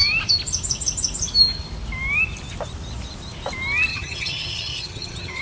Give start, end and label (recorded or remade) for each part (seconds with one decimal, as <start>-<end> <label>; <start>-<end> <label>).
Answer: 0.0-3.9 recorded; 3.9-5.4 remade